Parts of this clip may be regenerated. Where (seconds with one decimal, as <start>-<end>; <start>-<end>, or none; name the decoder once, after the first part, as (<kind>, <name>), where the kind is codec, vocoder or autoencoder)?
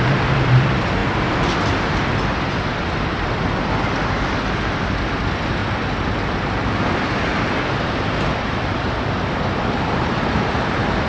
0.0-1.0 (vocoder, BigVGAN v2); 2.8-5.6; 6.2-11.1